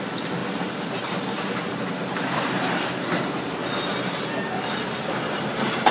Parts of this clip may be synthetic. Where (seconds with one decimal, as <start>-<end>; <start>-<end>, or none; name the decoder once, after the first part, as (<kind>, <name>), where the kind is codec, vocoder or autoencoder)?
0.0-3.6 (vocoder, BigVGAN v2); 5.1-5.9